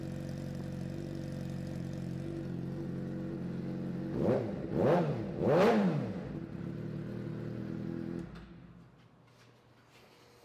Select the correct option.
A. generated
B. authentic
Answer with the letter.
B